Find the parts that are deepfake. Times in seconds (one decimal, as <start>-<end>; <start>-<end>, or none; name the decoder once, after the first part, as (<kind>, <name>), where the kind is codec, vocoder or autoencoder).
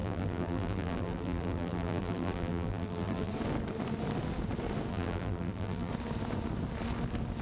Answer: 0.0-3.3 (vocoder, BigVGAN v2); 4.9-5.9